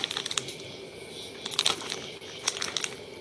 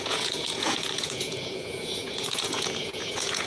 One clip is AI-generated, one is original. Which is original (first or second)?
first